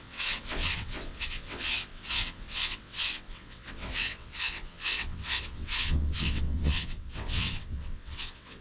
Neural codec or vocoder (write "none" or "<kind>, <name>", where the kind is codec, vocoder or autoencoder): vocoder, WaveNeXt